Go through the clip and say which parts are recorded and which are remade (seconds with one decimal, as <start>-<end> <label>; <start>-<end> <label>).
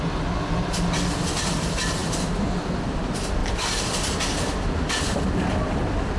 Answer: 0.0-3.4 recorded; 3.4-5.0 remade; 5.0-6.2 recorded